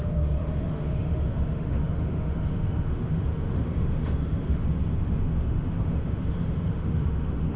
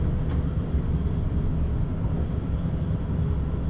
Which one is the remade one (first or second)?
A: first